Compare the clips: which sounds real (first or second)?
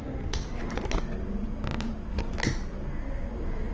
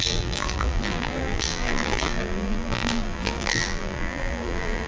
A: first